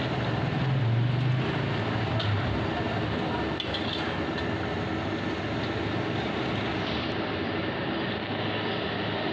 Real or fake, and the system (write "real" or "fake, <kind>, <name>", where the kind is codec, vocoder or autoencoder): real